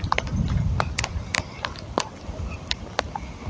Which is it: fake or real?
real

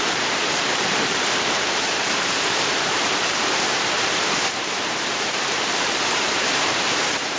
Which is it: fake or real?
fake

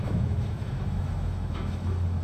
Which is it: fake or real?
fake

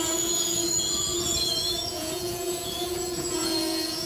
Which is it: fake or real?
fake